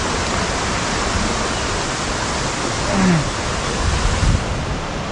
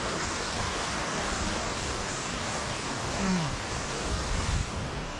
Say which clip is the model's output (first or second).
second